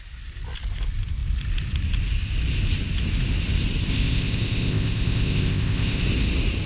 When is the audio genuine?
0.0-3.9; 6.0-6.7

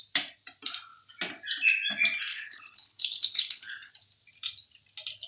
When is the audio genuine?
0.0-2.3; 3.9-5.3